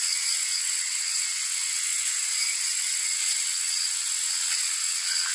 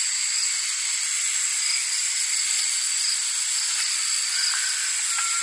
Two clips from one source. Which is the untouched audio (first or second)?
second